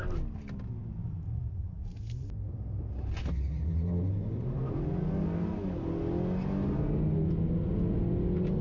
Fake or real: real